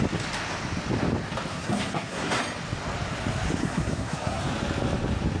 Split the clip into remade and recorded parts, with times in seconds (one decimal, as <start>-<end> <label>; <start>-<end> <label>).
0.0-1.5 recorded; 1.5-2.4 remade; 2.4-3.6 recorded; 3.6-4.4 remade; 4.4-5.4 recorded